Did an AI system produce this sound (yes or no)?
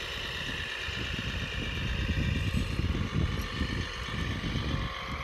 no